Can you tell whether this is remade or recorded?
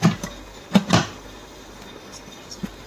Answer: recorded